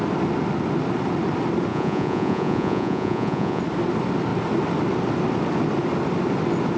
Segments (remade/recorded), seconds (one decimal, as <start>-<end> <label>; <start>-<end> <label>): 0.0-1.7 recorded; 1.7-3.6 remade; 3.6-6.8 recorded